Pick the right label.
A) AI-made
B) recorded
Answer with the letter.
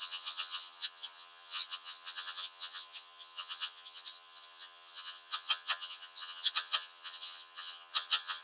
A